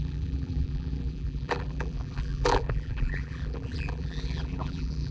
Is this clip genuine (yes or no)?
no